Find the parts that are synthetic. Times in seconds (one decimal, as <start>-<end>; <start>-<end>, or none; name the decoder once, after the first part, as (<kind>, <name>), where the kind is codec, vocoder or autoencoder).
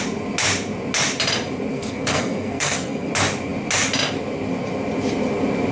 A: 1.7-3.1 (codec, SNAC)